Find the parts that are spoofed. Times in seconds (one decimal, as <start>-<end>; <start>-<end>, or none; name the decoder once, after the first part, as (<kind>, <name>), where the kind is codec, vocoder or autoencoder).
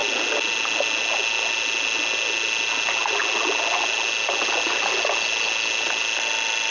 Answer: none